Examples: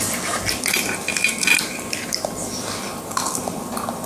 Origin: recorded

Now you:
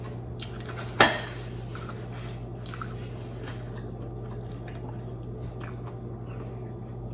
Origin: recorded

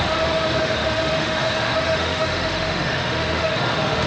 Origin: remade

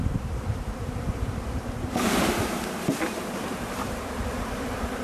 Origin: remade